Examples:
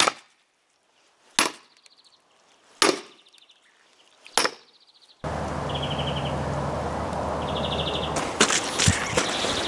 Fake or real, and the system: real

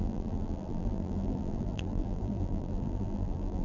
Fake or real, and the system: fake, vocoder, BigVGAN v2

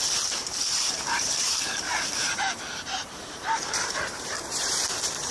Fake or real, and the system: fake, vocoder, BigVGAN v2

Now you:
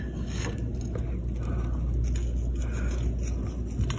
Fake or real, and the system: real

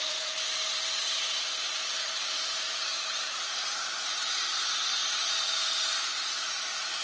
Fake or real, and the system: fake, vocoder, BigVGAN v2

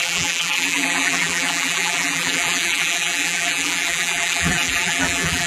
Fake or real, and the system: fake, vocoder, BigVGAN v2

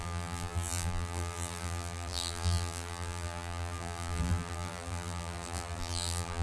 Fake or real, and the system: fake, vocoder, BigVGAN v2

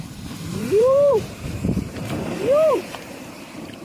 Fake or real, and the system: fake, vocoder, BigVGAN v2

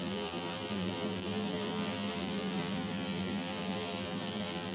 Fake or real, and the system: fake, vocoder, BigVGAN v2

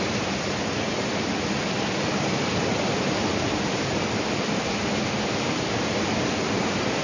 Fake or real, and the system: fake, vocoder, BigVGAN v2